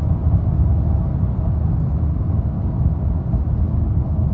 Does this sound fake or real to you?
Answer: real